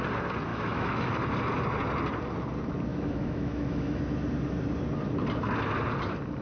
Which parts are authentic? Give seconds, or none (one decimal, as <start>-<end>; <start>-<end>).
0.0-0.5; 1.1-2.9; 4.0-6.4